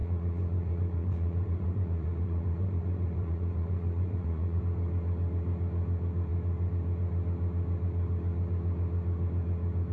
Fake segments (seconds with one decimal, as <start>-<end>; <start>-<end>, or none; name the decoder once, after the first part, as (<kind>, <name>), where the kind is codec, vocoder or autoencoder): 0.0-4.6 (vocoder, Vocos)